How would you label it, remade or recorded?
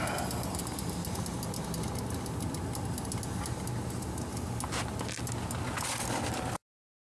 recorded